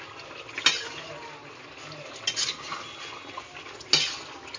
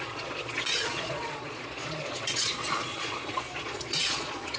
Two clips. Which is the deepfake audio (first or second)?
second